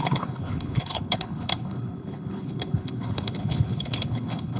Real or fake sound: fake